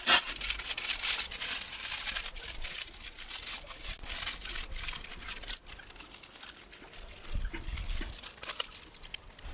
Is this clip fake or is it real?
real